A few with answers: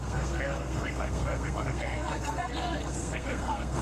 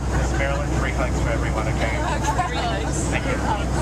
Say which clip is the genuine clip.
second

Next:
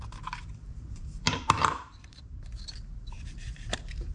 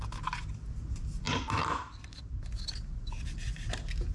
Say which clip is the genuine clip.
second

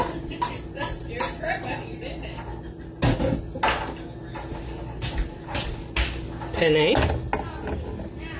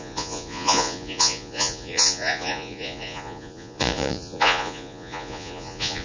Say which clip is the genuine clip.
first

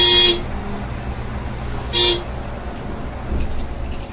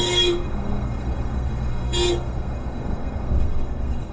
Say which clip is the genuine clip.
first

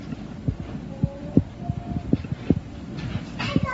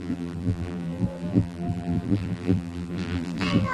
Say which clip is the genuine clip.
first